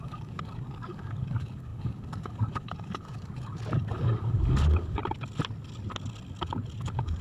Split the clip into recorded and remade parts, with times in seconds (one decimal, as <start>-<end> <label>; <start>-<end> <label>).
0.0-5.0 remade; 5.0-6.8 recorded; 6.8-7.2 remade